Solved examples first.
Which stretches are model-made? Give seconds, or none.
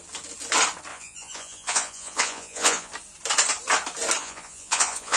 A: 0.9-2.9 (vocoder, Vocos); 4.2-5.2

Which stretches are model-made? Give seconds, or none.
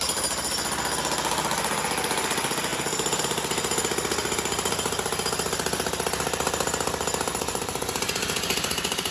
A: 7.3-9.1 (vocoder, Vocos)